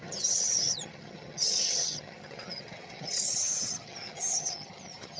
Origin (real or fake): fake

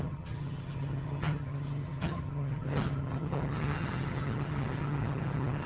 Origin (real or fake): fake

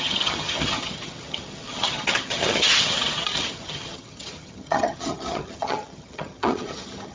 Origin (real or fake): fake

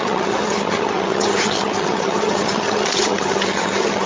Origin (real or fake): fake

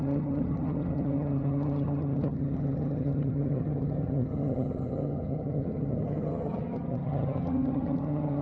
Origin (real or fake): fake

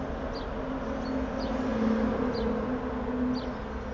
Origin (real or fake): real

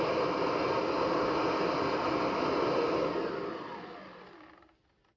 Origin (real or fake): real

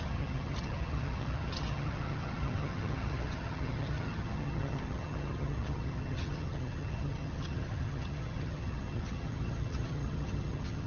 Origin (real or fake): fake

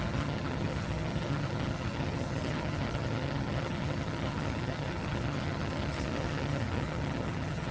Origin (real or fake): fake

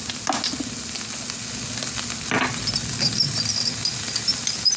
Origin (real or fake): real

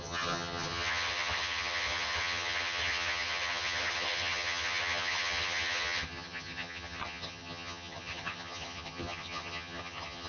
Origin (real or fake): fake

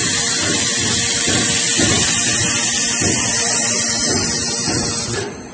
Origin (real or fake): real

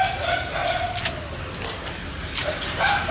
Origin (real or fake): real